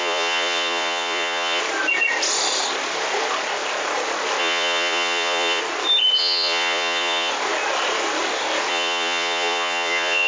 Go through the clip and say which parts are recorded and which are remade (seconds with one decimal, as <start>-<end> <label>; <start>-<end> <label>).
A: 0.0-1.6 remade; 1.6-4.4 recorded; 4.4-5.6 remade; 5.6-6.2 recorded; 6.2-7.3 remade; 7.3-8.7 recorded; 8.7-10.3 remade